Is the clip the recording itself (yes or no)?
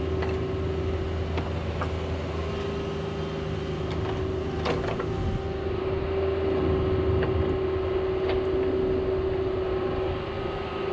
yes